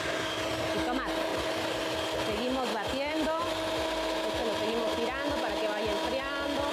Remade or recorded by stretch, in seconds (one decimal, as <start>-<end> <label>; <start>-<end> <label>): 0.0-6.7 recorded